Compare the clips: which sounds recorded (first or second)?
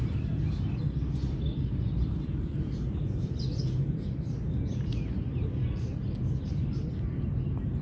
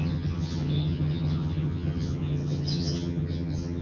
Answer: first